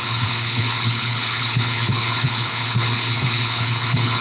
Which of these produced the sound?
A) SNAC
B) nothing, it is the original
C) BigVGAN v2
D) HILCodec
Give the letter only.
D